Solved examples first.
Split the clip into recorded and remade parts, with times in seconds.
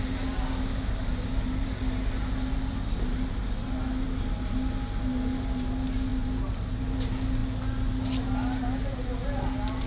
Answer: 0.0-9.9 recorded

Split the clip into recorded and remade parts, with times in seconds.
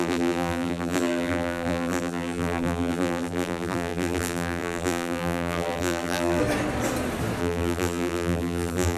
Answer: 0.0-6.4 remade; 6.4-7.4 recorded; 7.4-9.0 remade